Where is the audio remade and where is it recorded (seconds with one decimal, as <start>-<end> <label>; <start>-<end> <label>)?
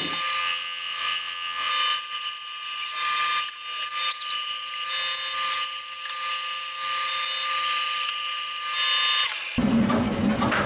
0.0-0.4 recorded; 0.4-1.7 remade; 1.7-10.7 recorded